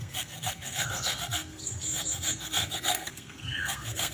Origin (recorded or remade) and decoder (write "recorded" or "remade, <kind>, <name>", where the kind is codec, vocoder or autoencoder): remade, codec, SNAC